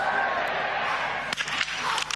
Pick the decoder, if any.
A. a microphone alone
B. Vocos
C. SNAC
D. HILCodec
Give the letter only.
A